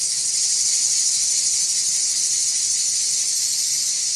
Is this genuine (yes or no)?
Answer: yes